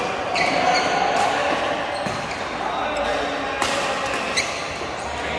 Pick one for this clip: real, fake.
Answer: real